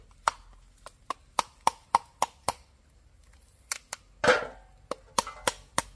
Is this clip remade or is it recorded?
recorded